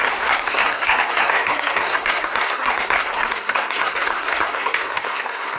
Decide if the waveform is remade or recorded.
remade